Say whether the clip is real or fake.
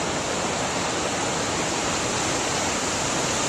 real